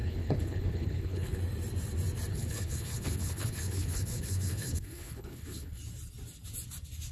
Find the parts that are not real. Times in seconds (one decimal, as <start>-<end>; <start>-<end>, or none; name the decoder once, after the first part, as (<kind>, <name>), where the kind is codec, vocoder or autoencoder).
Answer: 0.0-1.4 (codec, HILCodec); 2.3-5.8